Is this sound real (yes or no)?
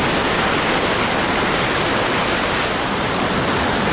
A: yes